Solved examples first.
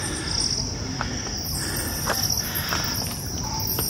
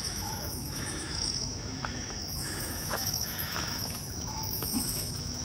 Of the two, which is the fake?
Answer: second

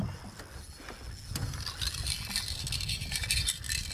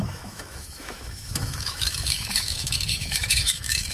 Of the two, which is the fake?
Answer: second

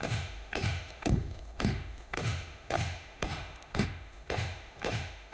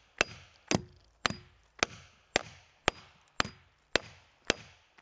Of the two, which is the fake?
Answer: first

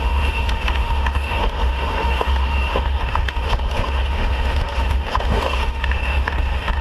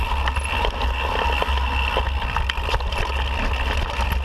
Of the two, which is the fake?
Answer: first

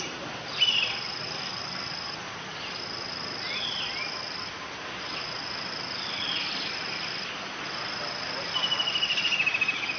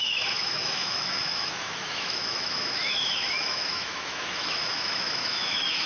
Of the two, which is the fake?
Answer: second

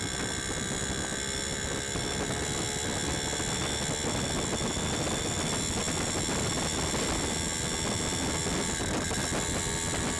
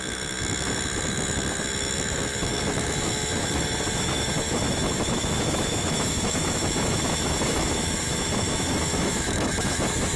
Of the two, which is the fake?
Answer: second